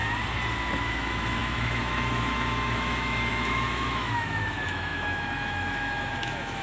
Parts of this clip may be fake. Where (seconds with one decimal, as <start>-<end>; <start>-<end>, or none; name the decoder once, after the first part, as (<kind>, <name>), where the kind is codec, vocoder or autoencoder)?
0.8-6.6 (autoencoder, DAC-VAE)